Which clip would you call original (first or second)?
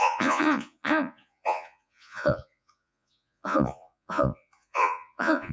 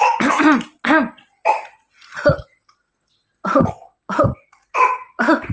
second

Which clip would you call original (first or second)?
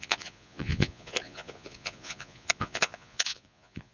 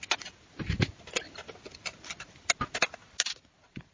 second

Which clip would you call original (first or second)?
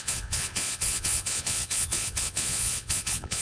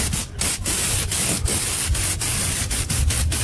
second